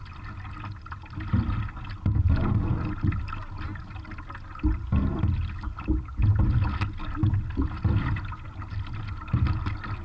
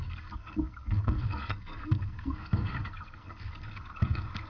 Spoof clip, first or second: second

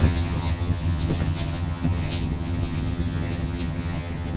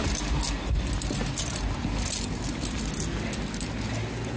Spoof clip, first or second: first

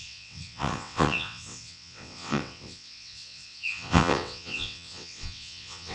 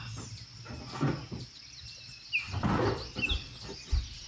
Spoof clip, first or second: first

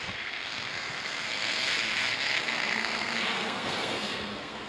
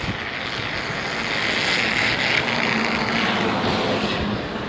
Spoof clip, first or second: first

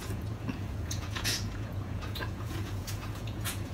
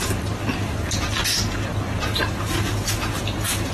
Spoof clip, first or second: first